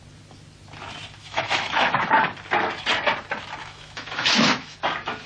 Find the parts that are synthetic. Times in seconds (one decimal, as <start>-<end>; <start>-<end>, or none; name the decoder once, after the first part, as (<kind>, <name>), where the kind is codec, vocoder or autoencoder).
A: 1.2-2.1 (autoencoder, DAC-VAE); 3.6-4.8